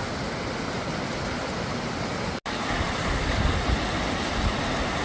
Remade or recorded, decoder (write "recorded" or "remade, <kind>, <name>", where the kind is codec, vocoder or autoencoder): recorded